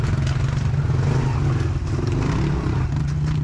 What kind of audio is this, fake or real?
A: real